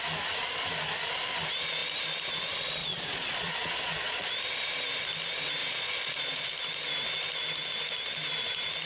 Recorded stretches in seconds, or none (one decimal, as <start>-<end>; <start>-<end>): 0.0-2.8; 4.3-5.6; 6.5-8.9